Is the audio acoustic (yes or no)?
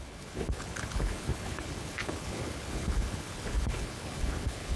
no